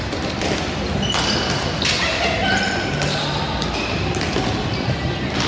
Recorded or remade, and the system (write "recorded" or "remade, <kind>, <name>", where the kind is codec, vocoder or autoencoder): recorded